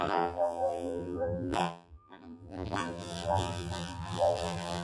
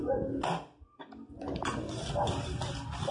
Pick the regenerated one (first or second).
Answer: first